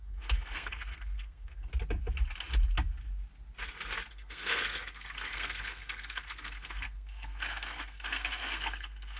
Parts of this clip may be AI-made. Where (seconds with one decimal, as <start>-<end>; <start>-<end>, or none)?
0.0-1.7; 4.1-9.2